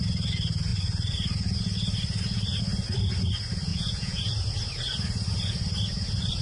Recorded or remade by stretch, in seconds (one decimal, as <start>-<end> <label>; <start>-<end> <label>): 0.0-3.7 recorded; 3.7-4.3 remade; 4.3-6.4 recorded